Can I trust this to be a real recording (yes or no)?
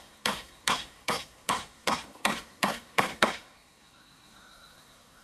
no